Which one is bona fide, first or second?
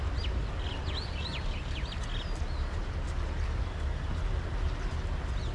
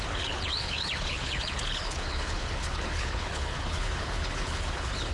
first